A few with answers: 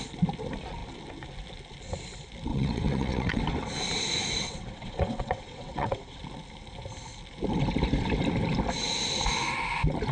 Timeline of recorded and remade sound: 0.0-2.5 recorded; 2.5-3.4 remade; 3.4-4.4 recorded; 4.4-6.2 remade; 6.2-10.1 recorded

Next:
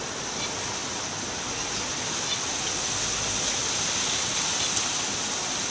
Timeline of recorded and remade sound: 0.0-5.7 recorded

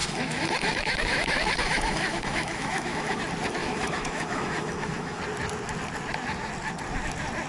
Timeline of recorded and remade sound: 0.0-3.2 remade; 3.2-3.6 recorded; 3.6-5.2 remade; 5.2-7.5 recorded

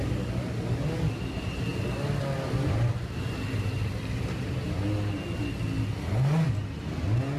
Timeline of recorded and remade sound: 0.0-7.4 recorded

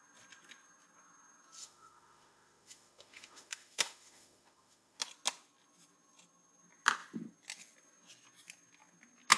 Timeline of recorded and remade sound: 0.0-1.6 recorded; 1.6-5.0 remade; 5.0-9.4 recorded